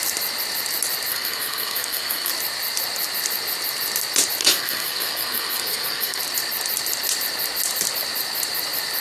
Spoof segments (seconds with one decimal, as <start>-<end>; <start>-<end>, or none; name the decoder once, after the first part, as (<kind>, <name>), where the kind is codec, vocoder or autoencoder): 1.1-2.3 (codec, SNAC); 4.4-6.2